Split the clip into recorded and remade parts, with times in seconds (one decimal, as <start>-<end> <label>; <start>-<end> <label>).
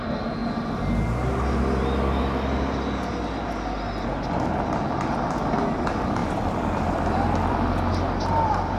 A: 0.0-6.2 recorded; 6.2-8.8 remade